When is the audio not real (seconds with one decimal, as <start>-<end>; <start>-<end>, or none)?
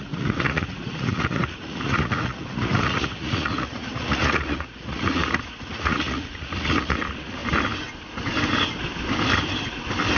0.0-7.4